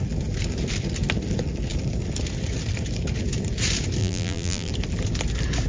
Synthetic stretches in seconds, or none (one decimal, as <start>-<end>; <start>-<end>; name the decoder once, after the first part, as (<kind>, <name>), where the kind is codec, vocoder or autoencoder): 4.0-4.7 (vocoder, BigVGAN v2)